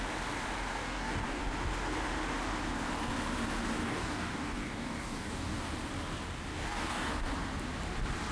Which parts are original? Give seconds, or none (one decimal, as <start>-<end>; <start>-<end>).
0.0-0.7; 1.4-3.8; 5.7-6.5; 7.1-8.3